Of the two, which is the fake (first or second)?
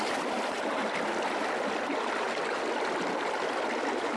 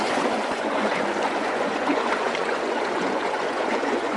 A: second